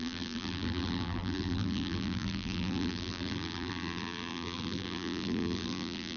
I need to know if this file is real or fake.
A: fake